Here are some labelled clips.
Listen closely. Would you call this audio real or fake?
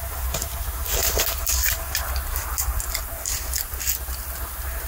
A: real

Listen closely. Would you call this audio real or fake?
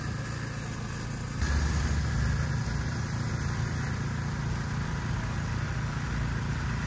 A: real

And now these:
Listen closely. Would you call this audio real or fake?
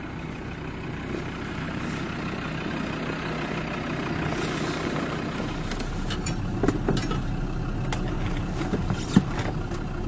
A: real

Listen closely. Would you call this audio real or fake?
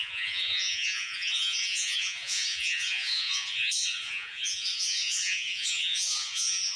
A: fake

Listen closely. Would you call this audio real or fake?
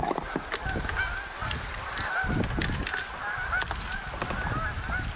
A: real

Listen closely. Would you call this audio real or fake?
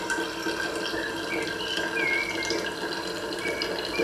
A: real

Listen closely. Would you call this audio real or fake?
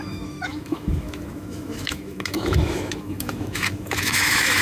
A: fake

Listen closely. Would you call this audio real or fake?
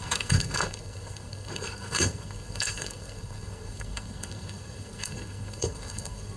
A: fake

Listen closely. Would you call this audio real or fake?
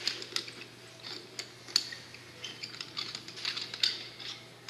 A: real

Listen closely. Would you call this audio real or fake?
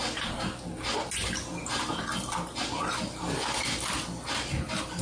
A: real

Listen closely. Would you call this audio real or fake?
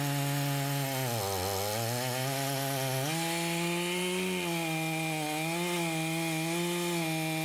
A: real